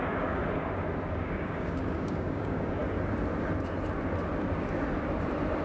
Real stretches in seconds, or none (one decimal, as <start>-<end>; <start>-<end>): 0.4-1.1; 2.8-5.6